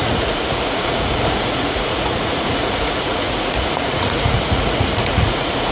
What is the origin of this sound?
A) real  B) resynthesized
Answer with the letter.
B